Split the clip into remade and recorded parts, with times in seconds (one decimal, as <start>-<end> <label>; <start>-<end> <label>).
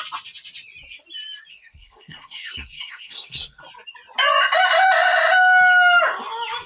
0.0-1.5 recorded; 1.5-3.6 remade; 3.6-6.7 recorded